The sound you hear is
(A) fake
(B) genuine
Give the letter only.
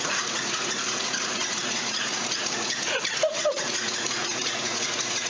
A